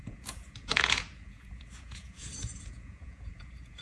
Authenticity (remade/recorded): remade